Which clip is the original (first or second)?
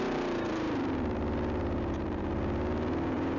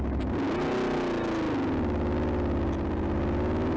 second